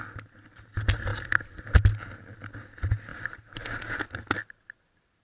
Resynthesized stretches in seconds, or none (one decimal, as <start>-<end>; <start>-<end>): 1.1-1.6; 3.1-4.0

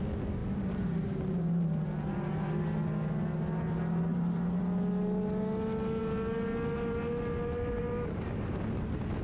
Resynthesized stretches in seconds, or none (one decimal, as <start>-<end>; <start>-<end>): 0.4-1.3; 4.1-4.6

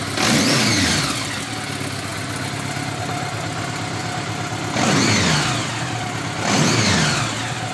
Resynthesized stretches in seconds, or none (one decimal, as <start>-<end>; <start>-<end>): none

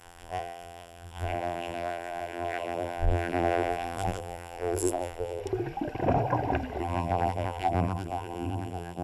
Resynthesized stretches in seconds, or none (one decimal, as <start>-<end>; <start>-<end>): 0.0-5.4; 6.8-9.0

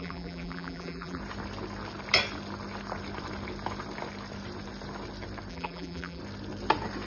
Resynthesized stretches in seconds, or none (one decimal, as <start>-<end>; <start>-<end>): 0.0-1.2; 5.5-6.2